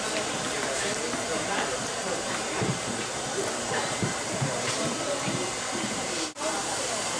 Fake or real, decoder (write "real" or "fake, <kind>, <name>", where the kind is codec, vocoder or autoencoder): fake, vocoder, BigVGAN v2